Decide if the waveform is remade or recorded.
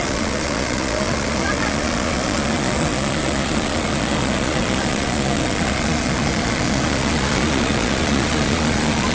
remade